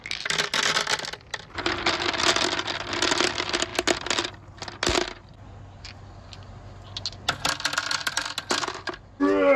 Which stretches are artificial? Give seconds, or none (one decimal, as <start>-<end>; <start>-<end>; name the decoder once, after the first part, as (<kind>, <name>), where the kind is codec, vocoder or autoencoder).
none